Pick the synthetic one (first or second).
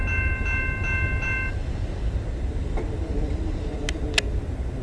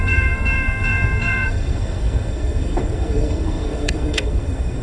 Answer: second